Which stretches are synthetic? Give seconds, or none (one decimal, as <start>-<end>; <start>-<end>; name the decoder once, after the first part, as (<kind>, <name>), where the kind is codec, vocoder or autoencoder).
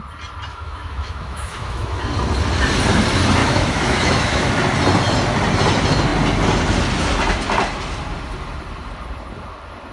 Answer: 0.5-2.0 (autoencoder, DAC-VAE); 3.4-4.6